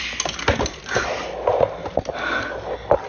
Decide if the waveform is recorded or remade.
recorded